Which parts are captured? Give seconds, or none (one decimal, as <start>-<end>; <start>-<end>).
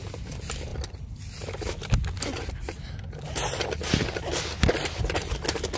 0.0-5.8